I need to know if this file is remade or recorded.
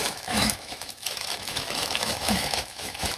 remade